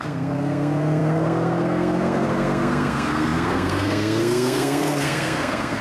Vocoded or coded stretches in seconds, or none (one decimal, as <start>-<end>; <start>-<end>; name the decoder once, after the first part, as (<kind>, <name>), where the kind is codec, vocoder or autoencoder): 0.0-5.8 (codec, SNAC)